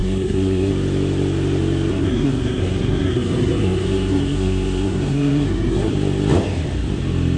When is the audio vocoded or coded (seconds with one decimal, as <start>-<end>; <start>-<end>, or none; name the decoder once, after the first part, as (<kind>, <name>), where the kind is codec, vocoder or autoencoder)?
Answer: 0.0-0.7 (codec, SNAC); 1.9-5.9